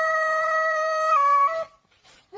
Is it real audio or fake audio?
fake